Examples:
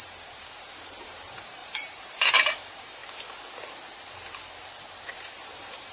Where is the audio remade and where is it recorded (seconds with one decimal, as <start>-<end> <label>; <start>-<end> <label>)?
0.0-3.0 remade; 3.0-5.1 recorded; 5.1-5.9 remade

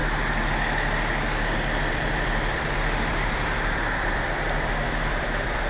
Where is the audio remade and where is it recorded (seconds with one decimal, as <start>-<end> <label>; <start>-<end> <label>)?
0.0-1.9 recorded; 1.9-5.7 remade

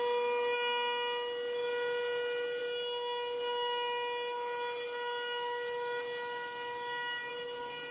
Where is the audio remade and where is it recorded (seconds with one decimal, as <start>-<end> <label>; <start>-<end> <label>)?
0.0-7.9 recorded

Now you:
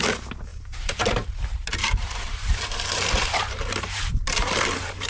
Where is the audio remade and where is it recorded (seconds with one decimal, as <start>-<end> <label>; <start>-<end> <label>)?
0.0-0.5 recorded; 0.5-1.3 remade; 1.3-1.8 recorded; 1.8-5.1 remade